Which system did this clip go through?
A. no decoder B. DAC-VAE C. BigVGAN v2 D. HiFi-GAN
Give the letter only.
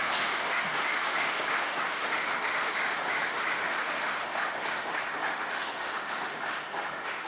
B